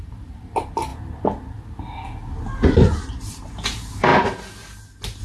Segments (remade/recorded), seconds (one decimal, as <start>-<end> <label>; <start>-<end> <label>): 0.0-0.9 remade; 0.9-3.1 recorded; 3.1-4.1 remade; 4.1-5.2 recorded